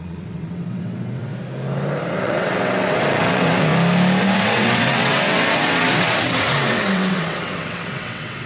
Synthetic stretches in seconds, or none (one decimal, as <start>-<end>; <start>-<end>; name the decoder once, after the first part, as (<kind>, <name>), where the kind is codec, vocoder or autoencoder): 0.0-1.3 (vocoder, WaveNeXt); 2.1-3.7; 4.2-8.5